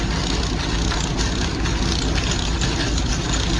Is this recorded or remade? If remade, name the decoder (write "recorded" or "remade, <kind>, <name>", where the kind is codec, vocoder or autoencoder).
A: recorded